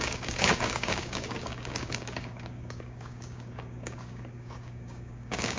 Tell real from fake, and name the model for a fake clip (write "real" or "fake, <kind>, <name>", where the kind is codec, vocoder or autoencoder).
fake, codec, DAC